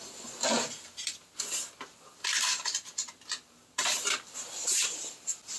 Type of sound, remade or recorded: recorded